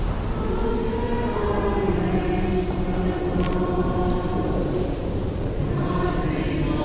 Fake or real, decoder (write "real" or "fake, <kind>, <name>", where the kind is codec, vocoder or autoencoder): real